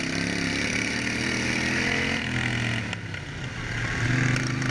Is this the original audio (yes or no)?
yes